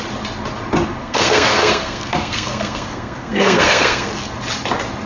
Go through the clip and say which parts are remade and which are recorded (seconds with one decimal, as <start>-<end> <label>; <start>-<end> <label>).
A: 0.0-1.0 recorded; 1.0-4.1 remade; 4.1-5.1 recorded